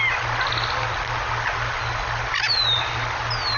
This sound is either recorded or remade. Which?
recorded